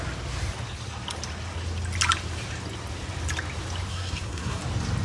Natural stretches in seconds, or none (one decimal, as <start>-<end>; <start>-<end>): 0.0-3.9; 4.6-5.0